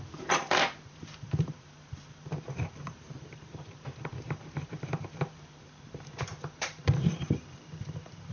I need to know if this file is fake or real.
fake